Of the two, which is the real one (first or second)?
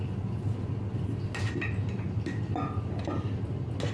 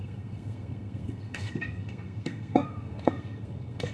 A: first